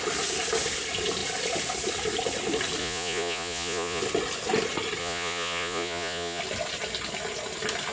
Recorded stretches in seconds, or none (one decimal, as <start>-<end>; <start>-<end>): 0.0-2.8; 4.0-5.0; 6.4-7.9